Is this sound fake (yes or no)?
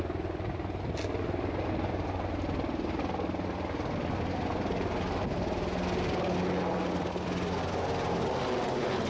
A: no